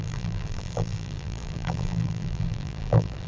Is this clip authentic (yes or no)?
no